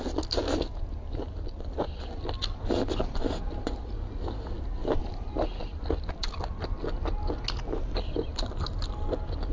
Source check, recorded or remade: recorded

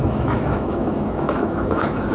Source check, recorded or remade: remade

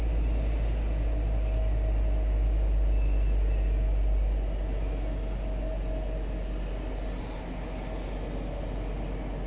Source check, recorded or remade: recorded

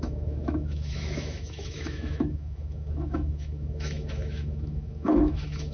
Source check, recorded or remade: remade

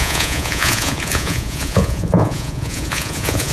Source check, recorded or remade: remade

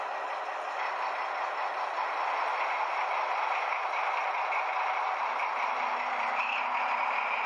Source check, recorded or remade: recorded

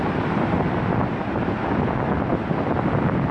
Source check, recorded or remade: recorded